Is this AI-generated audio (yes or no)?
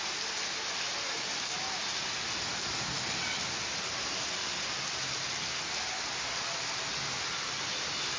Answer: no